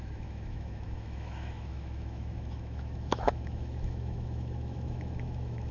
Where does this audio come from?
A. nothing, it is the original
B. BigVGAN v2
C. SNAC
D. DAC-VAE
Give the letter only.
D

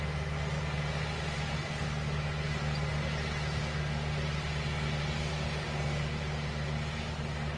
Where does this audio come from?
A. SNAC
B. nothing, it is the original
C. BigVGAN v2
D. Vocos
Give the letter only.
B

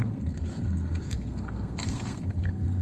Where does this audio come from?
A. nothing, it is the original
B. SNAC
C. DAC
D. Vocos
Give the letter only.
B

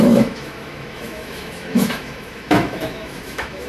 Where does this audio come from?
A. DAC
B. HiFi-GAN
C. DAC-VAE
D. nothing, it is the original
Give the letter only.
C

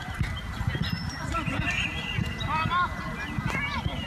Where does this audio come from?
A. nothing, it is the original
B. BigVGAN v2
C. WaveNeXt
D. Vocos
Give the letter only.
B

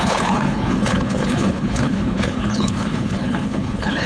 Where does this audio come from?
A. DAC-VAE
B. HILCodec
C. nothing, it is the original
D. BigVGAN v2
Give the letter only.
B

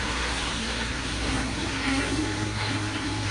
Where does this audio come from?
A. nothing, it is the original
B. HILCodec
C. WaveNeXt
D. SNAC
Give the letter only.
D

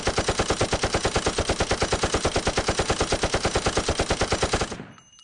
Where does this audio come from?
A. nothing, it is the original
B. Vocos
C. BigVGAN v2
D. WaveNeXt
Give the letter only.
A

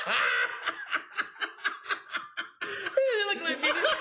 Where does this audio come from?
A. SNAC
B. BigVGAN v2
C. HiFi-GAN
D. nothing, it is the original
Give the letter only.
D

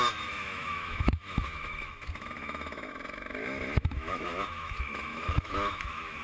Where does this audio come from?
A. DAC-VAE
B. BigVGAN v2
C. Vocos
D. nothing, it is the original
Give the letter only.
A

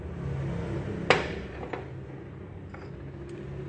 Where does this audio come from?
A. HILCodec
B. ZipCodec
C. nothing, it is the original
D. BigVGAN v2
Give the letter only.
C